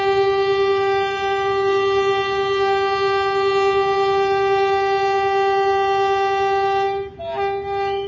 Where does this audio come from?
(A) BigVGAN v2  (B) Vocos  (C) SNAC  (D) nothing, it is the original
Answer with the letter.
D